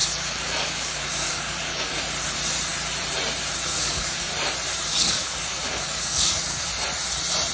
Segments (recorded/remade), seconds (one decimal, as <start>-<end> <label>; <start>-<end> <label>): 0.0-1.9 remade; 1.9-3.7 recorded; 3.7-4.3 remade; 4.3-4.9 recorded; 4.9-6.7 remade; 6.7-7.5 recorded